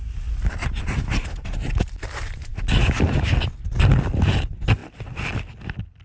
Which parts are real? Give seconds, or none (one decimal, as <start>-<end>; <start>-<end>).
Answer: 0.0-6.0